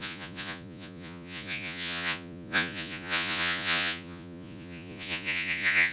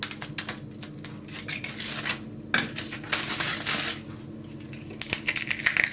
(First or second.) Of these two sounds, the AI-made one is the first